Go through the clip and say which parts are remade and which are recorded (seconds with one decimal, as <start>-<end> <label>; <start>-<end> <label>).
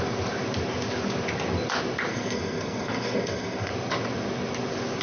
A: 0.0-2.1 recorded; 2.1-3.7 remade; 3.7-5.0 recorded